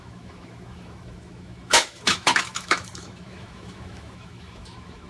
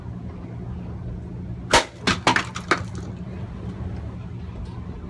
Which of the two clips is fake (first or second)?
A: first